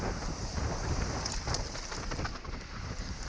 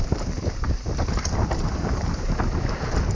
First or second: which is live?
first